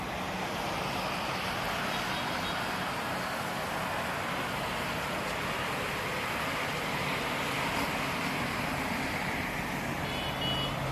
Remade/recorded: recorded